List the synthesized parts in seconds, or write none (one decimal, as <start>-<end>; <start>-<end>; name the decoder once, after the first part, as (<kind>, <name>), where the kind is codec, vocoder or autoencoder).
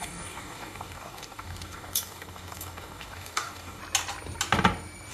0.0-3.8 (codec, DAC)